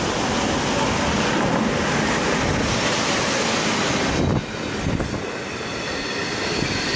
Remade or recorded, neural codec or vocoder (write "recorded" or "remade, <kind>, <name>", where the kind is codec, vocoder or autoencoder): recorded